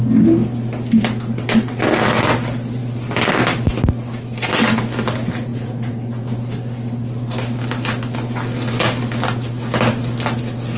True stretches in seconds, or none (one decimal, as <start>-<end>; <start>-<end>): 0.0-5.5; 6.4-10.8